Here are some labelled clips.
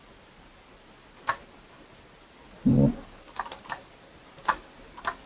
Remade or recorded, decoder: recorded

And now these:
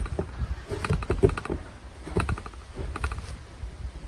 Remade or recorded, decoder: recorded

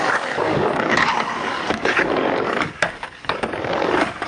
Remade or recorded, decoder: remade, codec, DAC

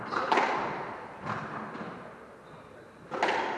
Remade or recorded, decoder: recorded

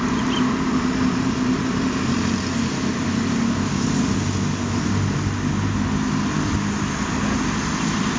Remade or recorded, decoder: recorded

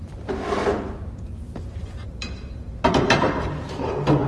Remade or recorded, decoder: remade, vocoder, BigVGAN v2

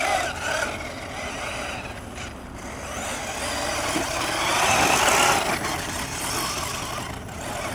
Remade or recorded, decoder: recorded